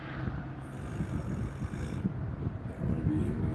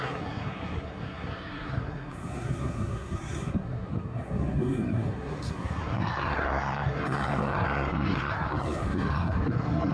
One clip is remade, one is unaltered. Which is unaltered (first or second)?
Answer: first